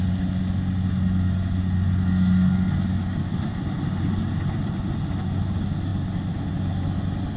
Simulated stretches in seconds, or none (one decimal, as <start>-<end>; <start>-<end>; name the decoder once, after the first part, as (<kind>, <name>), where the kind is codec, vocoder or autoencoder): none